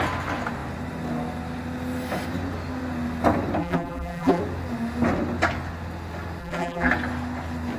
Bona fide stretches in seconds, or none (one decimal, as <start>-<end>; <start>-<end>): 0.0-3.6; 4.4-6.4; 6.9-7.8